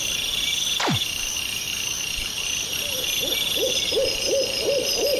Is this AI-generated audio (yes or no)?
yes